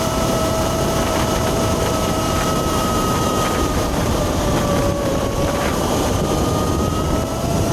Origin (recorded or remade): remade